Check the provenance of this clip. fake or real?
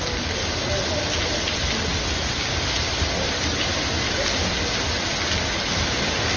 real